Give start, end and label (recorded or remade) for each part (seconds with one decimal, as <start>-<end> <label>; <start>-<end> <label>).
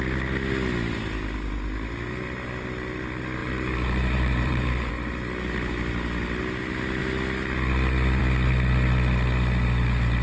0.0-3.4 recorded; 3.4-4.9 remade; 4.9-10.2 recorded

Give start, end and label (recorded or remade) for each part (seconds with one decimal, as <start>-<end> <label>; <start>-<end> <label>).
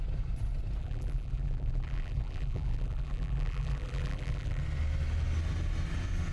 0.0-0.8 recorded; 0.8-4.6 remade; 4.6-6.3 recorded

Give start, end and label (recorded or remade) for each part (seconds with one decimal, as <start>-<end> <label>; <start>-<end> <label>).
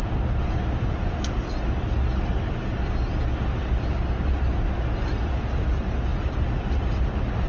0.0-7.5 recorded